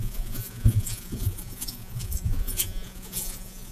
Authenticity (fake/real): fake